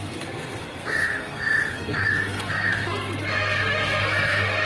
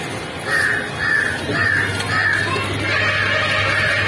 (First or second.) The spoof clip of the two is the first